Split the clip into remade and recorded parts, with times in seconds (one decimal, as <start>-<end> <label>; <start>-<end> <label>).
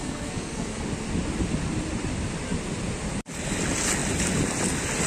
0.0-0.8 remade; 0.8-5.1 recorded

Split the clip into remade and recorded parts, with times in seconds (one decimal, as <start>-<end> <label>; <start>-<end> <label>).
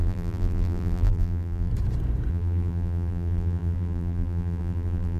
0.0-1.7 remade; 1.7-2.3 recorded; 2.3-5.2 remade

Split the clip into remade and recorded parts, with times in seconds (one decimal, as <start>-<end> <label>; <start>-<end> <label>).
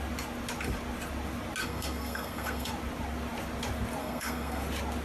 0.0-1.6 recorded; 1.6-2.7 remade; 2.7-4.0 recorded; 4.0-4.6 remade; 4.6-5.0 recorded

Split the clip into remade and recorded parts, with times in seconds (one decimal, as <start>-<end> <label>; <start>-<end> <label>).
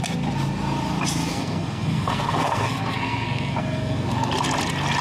0.0-1.3 recorded; 1.3-4.3 remade; 4.3-5.0 recorded